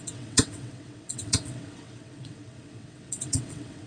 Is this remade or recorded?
remade